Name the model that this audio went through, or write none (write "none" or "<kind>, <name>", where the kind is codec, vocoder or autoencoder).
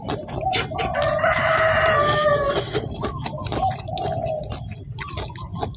none